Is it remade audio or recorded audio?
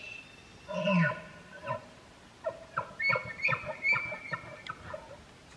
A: recorded